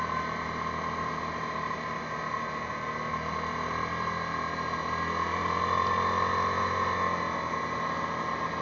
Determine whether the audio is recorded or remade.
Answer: recorded